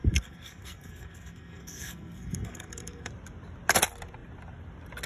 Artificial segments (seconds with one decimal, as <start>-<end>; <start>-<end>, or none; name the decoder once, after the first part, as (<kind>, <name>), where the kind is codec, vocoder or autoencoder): 0.0-3.1 (codec, SNAC)